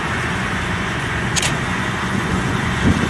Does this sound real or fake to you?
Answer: fake